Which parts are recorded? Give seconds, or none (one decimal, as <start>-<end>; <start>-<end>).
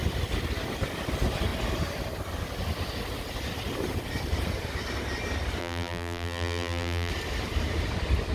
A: 0.0-5.6; 7.1-8.3